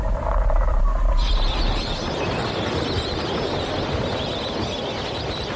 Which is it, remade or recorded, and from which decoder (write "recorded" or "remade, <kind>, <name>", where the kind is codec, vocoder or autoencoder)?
recorded